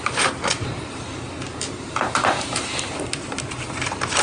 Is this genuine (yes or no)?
no